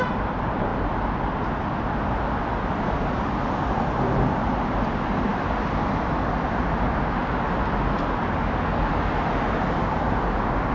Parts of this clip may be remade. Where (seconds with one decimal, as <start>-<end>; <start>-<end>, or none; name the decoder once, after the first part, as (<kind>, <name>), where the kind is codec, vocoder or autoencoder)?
none